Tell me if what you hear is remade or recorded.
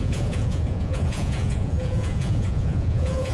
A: remade